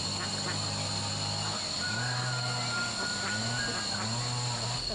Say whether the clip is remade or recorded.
recorded